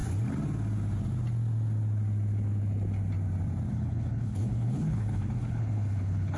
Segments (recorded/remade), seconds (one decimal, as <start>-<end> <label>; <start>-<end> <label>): 0.0-3.7 recorded; 3.7-6.4 remade